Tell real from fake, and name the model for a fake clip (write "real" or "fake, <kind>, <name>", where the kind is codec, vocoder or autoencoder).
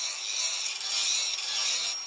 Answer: real